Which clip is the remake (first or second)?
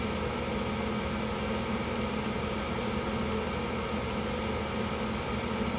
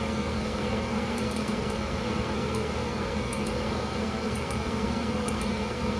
second